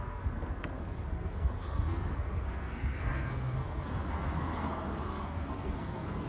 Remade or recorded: remade